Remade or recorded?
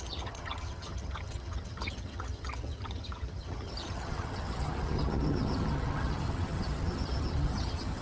remade